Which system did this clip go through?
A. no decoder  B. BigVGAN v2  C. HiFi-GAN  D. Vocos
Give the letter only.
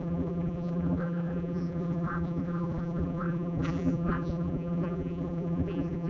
B